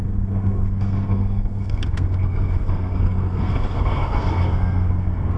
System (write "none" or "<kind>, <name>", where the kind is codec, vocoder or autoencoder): codec, SNAC